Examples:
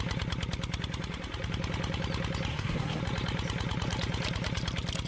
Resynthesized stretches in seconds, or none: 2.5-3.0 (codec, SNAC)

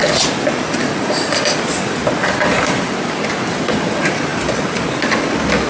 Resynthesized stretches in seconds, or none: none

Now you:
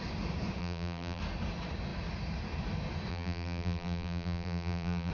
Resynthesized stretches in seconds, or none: 0.6-1.2 (vocoder, BigVGAN v2); 3.1-5.1

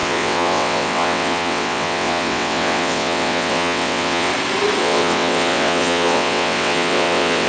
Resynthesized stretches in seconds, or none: 0.0-4.3 (vocoder, WaveNeXt); 4.8-7.5

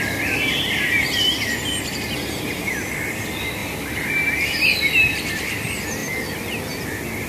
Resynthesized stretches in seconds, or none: none

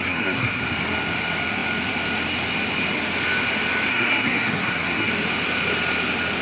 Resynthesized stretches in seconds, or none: 0.0-0.6 (codec, SNAC); 3.9-5.1

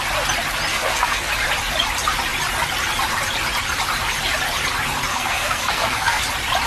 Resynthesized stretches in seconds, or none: 0.7-1.3 (codec, SNAC); 5.1-6.2